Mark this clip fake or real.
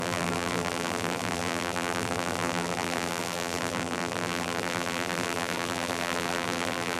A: fake